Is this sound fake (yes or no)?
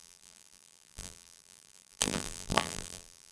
yes